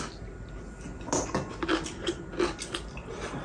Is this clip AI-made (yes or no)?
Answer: no